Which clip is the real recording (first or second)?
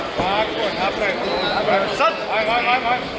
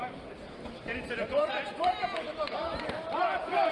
first